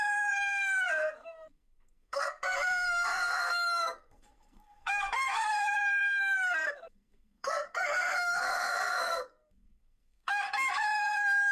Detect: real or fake fake